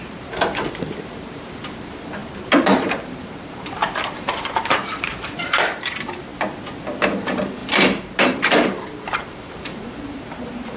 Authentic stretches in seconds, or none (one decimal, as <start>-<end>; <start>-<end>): 6.3-7.1